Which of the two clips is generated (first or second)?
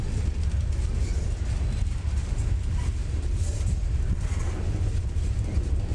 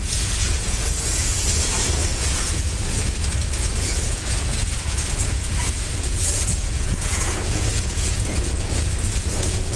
second